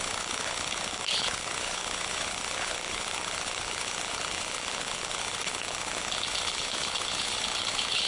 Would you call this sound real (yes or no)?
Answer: no